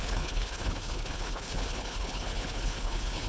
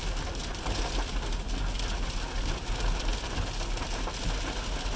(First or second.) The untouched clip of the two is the second